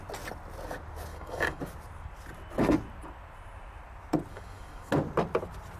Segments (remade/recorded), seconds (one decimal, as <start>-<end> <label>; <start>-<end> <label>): 0.0-1.1 recorded; 1.1-1.6 remade; 1.6-4.3 recorded; 4.3-4.9 remade; 4.9-5.8 recorded